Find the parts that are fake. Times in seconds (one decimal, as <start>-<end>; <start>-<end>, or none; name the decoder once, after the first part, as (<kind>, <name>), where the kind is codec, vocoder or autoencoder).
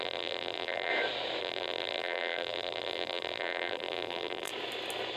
0.0-0.9 (vocoder, BigVGAN v2); 1.4-4.5